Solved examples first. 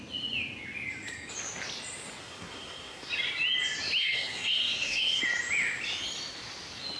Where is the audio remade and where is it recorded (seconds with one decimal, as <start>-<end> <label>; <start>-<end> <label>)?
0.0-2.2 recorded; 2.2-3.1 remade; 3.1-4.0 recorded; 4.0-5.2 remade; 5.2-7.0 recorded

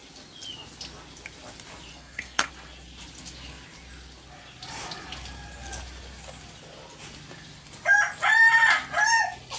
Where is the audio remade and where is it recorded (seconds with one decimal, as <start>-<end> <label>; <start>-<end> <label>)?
0.0-1.9 recorded; 1.9-2.5 remade; 2.5-9.6 recorded

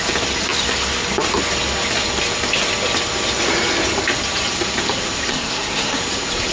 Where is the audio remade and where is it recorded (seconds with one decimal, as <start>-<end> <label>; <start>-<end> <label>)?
0.0-5.3 recorded; 5.3-6.0 remade; 6.0-6.5 recorded

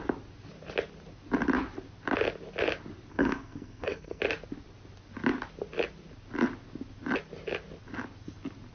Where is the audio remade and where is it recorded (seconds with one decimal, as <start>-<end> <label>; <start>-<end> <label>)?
0.0-3.1 recorded; 3.1-4.2 remade; 4.2-8.7 recorded